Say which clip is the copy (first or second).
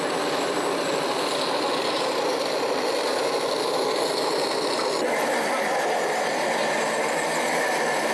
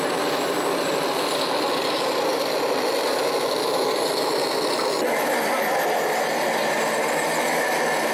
first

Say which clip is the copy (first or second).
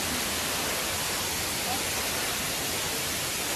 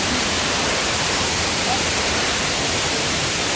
second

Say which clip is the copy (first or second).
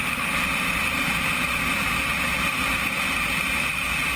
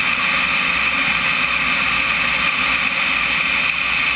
first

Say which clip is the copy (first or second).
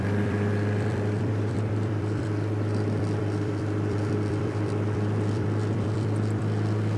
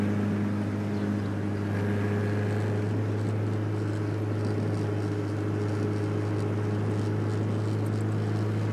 first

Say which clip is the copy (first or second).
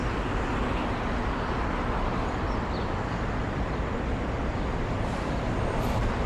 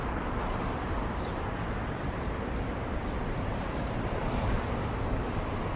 second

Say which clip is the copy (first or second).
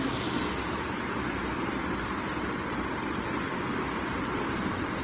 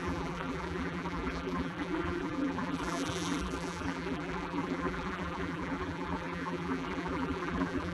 second